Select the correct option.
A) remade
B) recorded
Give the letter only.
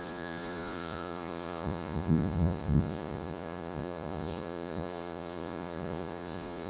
A